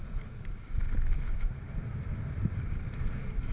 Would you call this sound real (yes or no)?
yes